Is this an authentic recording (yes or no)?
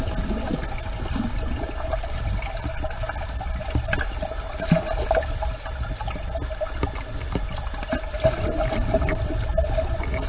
yes